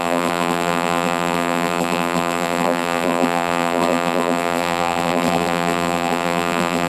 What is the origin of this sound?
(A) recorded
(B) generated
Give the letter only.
B